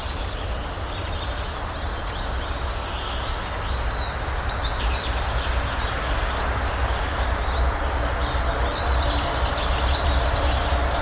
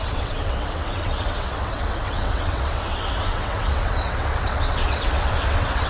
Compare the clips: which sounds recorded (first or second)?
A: first